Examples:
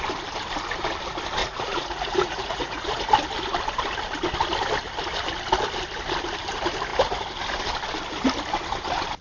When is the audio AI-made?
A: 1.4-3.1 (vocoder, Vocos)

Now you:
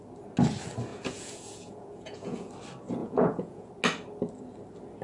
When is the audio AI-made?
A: 0.9-2.5 (vocoder, Vocos); 3.0-3.7

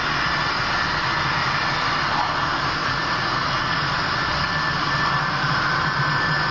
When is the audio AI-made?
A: 2.8-3.9 (vocoder, Vocos)